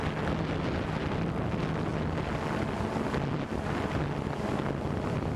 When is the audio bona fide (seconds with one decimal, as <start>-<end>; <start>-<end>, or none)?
0.0-5.4